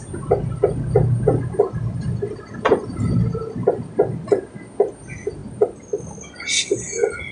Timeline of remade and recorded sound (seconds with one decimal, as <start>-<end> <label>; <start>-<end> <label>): 0.0-7.3 recorded